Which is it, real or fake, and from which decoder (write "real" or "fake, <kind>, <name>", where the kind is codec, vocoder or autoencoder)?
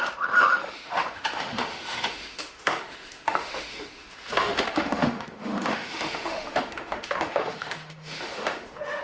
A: fake, autoencoder, DAC-VAE